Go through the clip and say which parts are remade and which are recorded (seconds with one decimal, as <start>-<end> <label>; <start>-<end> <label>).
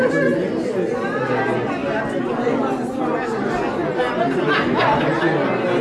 0.0-5.8 recorded